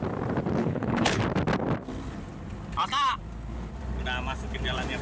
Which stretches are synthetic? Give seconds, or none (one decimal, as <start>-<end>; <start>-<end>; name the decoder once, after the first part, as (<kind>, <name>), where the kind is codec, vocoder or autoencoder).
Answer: 0.6-1.2 (codec, HILCodec)